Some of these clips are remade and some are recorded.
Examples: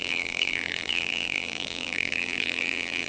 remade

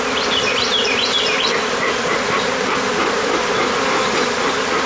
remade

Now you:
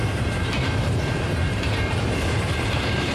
remade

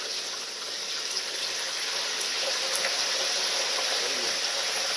recorded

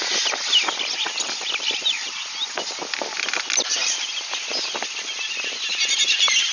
recorded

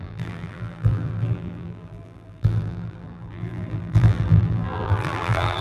remade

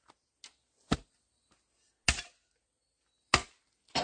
recorded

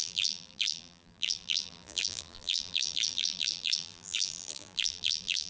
remade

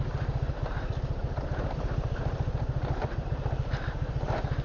remade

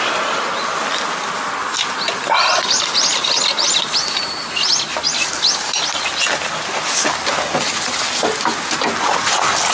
recorded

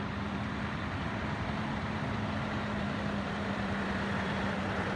remade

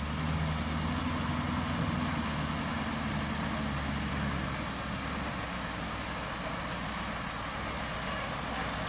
recorded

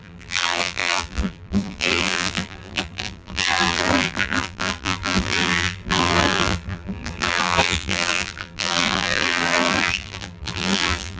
remade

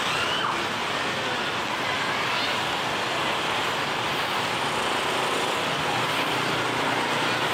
recorded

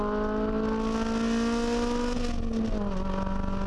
recorded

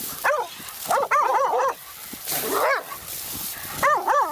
recorded